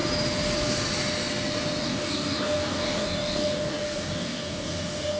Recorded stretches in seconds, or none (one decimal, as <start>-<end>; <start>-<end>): 0.0-1.8